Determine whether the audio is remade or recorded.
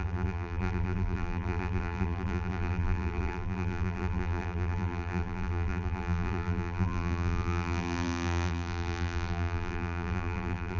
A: remade